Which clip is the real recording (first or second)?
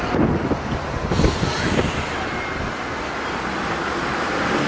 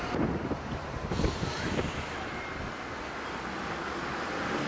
first